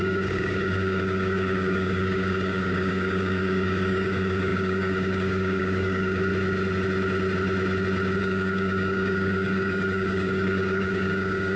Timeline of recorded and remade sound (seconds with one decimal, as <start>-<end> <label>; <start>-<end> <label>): 0.0-6.3 remade; 6.3-8.2 recorded; 8.2-11.6 remade